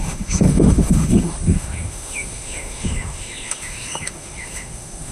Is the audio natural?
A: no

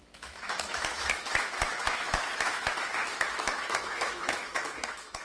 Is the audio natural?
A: no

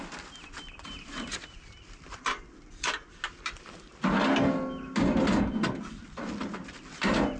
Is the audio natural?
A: yes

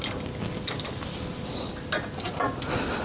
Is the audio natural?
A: yes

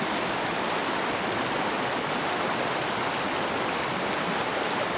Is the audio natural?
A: yes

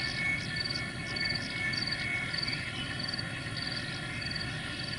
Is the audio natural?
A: yes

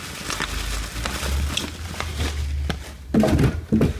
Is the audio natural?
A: yes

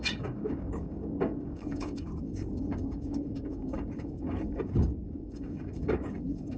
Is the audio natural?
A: no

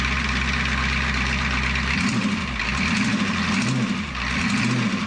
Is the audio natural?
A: yes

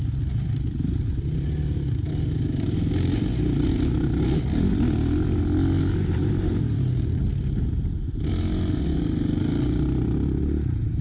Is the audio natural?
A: yes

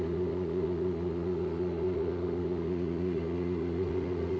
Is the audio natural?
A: no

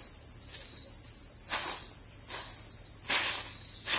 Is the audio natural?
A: yes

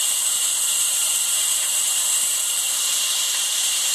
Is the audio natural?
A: no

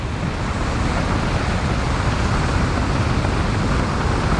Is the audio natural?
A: yes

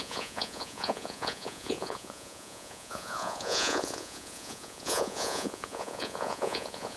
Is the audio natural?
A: no